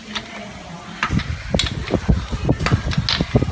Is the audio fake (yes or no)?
no